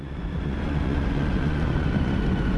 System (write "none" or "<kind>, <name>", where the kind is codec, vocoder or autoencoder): vocoder, Vocos